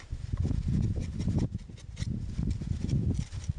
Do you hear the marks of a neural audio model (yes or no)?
yes